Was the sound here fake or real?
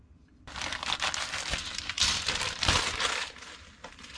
fake